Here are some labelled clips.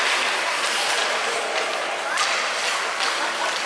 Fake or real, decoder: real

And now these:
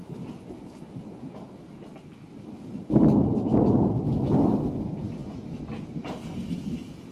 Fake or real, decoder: real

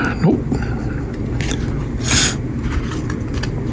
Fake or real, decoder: real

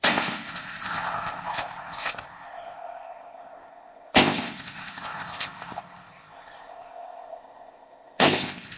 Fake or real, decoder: fake, codec, ZipCodec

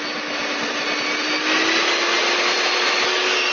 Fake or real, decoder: real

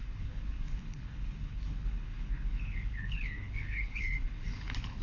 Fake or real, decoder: fake, codec, HILCodec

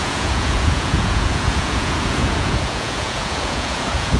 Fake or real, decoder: fake, vocoder, Vocos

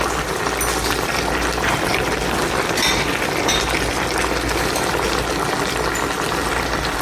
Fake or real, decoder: real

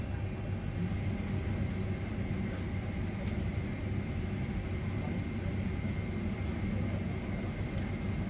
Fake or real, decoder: real